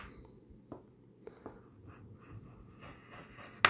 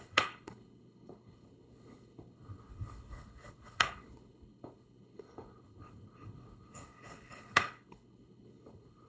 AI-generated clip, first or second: second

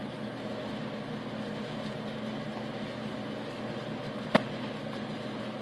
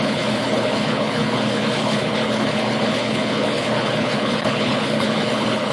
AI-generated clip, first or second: second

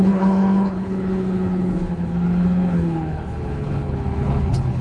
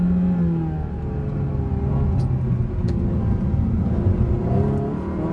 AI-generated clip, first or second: first